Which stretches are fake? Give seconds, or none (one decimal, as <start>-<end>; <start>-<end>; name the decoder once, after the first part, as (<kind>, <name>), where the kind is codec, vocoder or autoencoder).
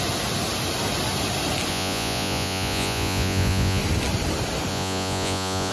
1.7-3.8 (vocoder, Vocos); 4.7-5.7